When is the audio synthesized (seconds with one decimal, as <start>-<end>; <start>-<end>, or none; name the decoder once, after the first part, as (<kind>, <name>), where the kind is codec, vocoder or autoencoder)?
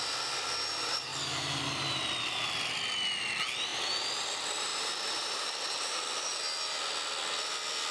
none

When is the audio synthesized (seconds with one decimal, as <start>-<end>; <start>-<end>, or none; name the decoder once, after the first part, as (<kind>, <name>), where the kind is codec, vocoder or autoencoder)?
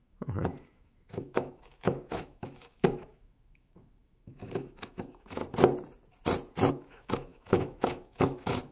0.0-5.4 (autoencoder, DAC-VAE); 6.7-8.7